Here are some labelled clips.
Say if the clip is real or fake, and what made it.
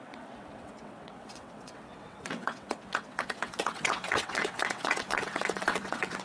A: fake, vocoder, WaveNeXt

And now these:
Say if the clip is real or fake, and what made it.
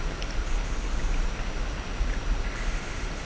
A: real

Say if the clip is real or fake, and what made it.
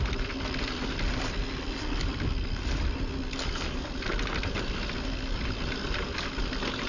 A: real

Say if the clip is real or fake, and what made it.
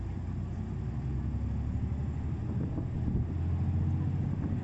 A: real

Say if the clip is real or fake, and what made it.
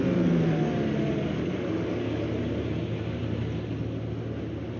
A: real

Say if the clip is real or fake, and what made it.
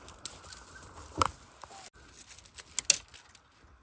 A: real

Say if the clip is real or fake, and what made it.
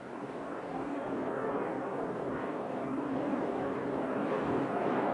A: fake, codec, DAC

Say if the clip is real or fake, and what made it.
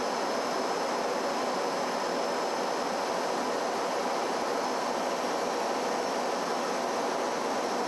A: real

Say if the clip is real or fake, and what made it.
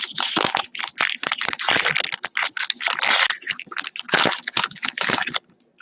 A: real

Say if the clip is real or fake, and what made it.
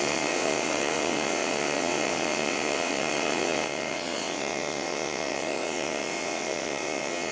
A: fake, vocoder, WaveNeXt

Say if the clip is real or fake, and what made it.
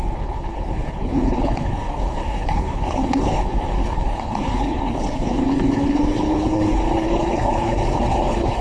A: fake, codec, HILCodec